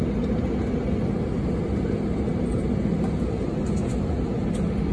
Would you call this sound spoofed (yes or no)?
no